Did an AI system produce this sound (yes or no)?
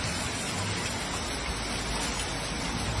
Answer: no